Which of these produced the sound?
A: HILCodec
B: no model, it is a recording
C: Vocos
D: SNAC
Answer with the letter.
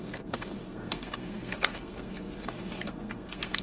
D